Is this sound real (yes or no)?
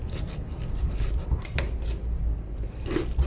yes